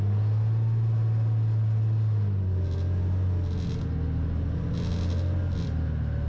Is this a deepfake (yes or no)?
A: no